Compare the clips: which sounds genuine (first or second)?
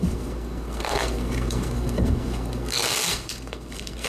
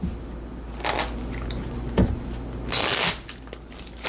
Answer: second